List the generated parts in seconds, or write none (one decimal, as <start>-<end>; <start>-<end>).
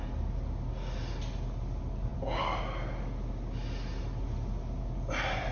none